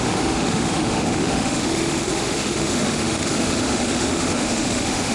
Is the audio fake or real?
fake